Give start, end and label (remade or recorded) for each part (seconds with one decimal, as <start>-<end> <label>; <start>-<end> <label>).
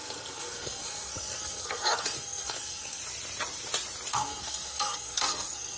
0.0-3.0 remade; 3.0-4.1 recorded; 4.1-5.8 remade